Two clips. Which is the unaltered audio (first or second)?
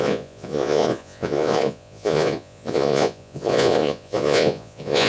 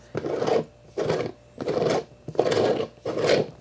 second